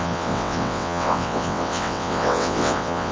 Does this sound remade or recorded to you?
remade